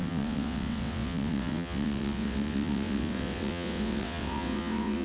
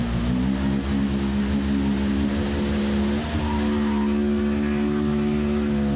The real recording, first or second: second